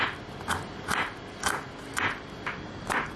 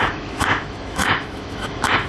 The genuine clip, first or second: first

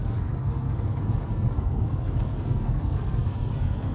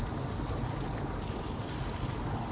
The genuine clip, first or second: second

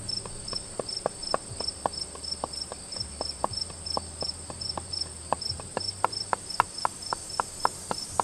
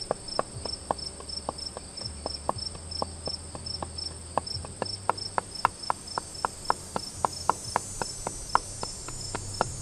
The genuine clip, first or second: second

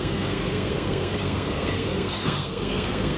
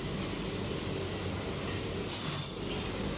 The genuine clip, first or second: second